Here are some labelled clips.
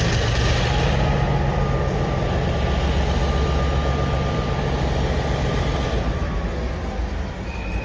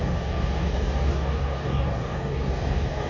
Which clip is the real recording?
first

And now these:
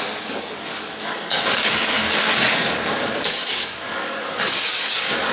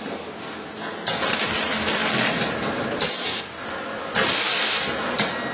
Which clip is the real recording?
second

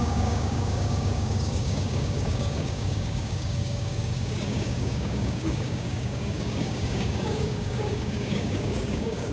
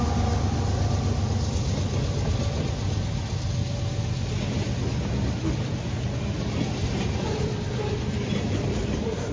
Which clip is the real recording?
second